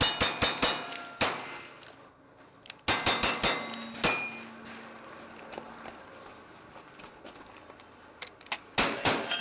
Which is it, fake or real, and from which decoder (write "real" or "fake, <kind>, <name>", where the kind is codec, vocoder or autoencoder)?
real